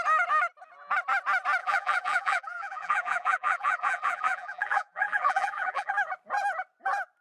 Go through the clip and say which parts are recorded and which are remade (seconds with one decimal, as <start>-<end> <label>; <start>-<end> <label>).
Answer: 0.0-1.6 recorded; 1.6-5.9 remade; 5.9-7.2 recorded